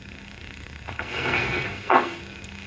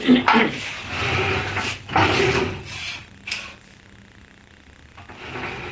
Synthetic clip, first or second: first